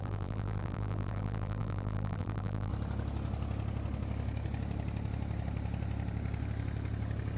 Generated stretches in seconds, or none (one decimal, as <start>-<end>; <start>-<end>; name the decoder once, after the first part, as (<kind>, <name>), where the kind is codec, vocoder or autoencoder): 0.0-2.7 (vocoder, BigVGAN v2)